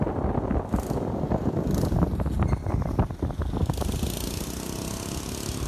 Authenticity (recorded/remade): recorded